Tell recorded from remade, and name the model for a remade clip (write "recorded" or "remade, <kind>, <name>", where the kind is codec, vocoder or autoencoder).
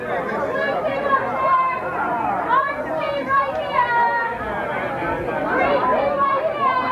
recorded